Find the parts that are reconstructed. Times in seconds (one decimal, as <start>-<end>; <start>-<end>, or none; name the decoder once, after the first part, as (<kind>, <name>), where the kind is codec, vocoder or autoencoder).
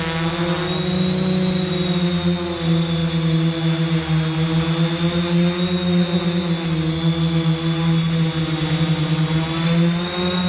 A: none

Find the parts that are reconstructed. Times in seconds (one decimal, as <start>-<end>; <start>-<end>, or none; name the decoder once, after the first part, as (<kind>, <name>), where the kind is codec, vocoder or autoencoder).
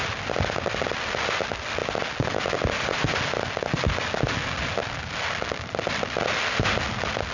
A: none